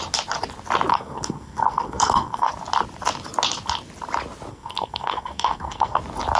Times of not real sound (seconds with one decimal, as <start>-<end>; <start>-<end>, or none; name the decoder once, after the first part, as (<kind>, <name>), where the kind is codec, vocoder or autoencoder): 0.9-2.5 (codec, SNAC); 4.5-6.0